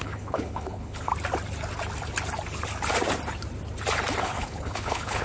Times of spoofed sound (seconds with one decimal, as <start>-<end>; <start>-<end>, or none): 0.0-1.1; 4.2-5.2